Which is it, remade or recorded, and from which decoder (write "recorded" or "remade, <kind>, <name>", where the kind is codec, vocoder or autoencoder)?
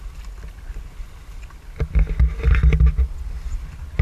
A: recorded